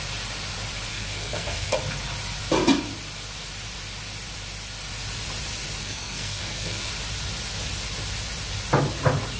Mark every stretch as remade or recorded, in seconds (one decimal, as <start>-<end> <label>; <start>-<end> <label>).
0.0-0.9 recorded; 0.9-1.8 remade; 1.8-5.8 recorded; 5.8-6.9 remade; 6.9-9.4 recorded